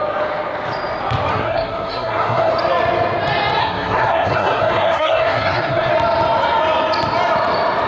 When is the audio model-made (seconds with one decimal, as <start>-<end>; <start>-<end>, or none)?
1.3-2.5; 3.6-5.9